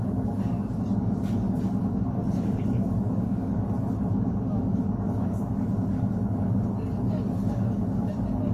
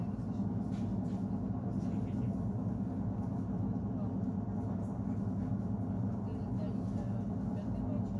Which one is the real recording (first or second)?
second